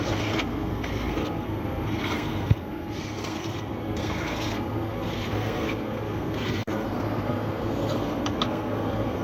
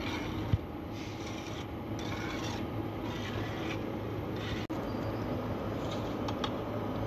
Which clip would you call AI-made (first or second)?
first